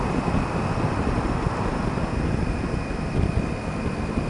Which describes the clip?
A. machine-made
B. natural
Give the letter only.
B